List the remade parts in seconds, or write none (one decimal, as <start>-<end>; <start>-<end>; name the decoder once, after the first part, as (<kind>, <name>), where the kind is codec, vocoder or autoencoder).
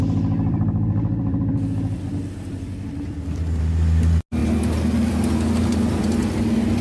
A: 0.0-3.6 (vocoder, BigVGAN v2)